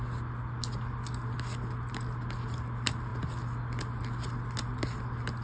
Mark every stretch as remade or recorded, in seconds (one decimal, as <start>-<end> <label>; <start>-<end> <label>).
0.0-5.4 recorded